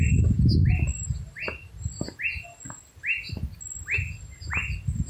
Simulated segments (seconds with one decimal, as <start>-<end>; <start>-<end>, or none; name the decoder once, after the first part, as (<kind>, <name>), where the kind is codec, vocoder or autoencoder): none